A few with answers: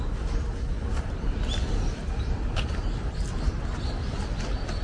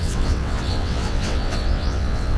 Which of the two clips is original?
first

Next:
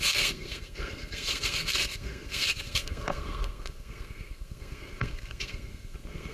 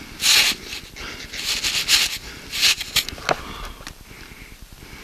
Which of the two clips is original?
second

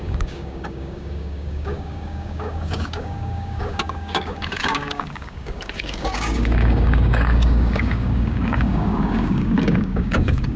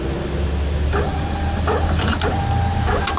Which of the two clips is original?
second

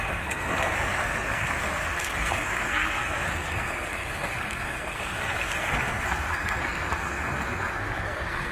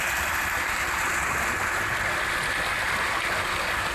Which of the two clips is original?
second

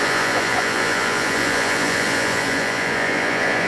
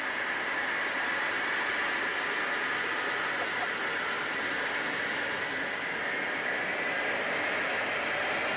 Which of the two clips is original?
second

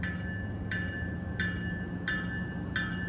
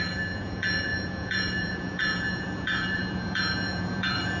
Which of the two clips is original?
first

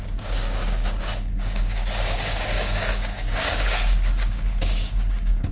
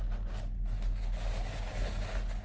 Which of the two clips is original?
second